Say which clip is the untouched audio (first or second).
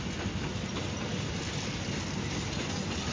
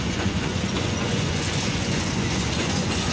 first